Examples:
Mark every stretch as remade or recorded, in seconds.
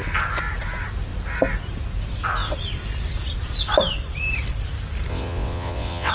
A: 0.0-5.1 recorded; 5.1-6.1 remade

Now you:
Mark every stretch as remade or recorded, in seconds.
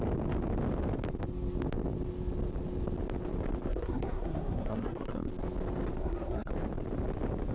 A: 0.0-3.7 recorded; 3.7-5.3 remade; 5.3-6.0 recorded; 6.0-6.5 remade; 6.5-7.5 recorded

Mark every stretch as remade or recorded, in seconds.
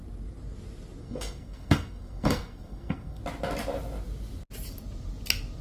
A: 0.0-1.0 recorded; 1.0-3.2 remade; 3.2-5.6 recorded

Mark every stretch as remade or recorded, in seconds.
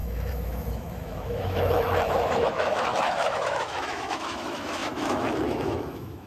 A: 0.0-6.3 remade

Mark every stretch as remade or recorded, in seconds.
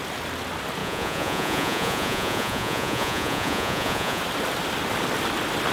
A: 0.0-0.8 recorded; 0.8-4.2 remade; 4.2-5.7 recorded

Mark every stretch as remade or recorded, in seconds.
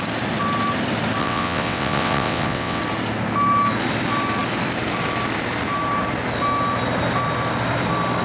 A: 0.0-1.2 recorded; 1.2-2.8 remade; 2.8-8.2 recorded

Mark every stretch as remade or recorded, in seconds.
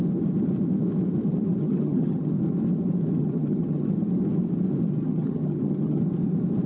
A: 0.0-1.6 recorded; 1.6-2.3 remade; 2.3-3.2 recorded; 3.2-3.9 remade; 3.9-5.0 recorded; 5.0-6.0 remade; 6.0-6.7 recorded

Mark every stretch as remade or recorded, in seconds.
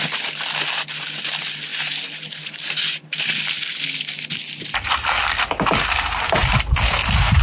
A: 0.0-1.7 recorded; 1.7-2.7 remade; 2.7-7.4 recorded